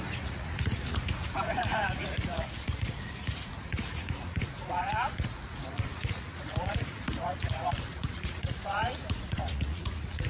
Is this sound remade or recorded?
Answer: remade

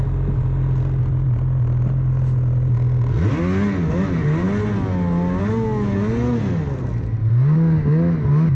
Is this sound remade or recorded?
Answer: recorded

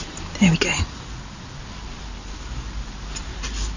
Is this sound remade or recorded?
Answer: recorded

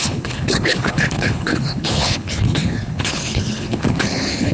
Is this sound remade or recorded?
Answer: remade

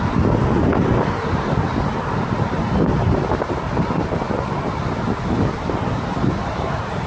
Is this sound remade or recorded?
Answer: recorded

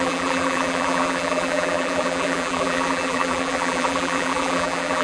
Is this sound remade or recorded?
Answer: remade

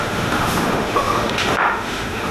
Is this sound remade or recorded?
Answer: remade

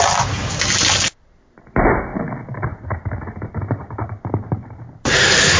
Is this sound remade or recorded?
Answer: recorded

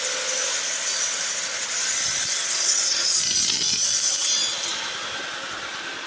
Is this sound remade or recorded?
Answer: recorded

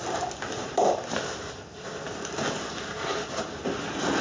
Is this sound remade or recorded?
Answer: recorded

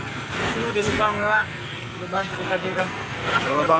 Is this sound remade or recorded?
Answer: remade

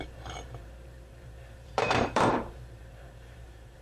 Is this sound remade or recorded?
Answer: remade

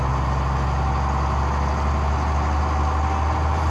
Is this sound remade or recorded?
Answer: recorded